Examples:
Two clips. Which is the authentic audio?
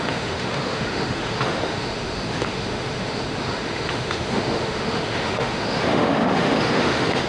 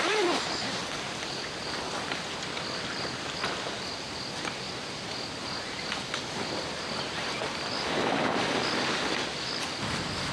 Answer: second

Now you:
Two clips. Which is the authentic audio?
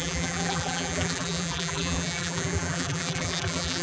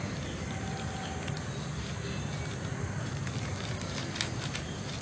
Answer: second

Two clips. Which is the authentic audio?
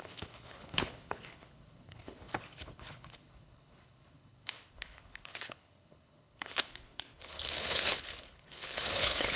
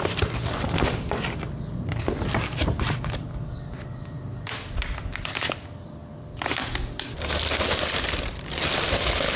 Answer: second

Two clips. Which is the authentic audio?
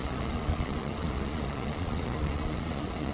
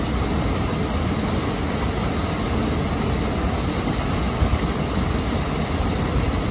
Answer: second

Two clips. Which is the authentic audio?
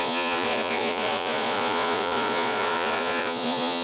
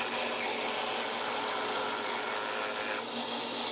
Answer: second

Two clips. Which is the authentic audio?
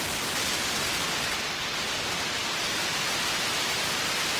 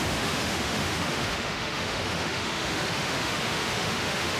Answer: first